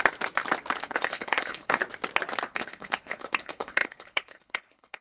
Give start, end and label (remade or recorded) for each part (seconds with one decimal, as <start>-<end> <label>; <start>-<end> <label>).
0.0-0.8 recorded; 0.8-1.8 remade; 1.8-2.5 recorded; 2.5-5.0 remade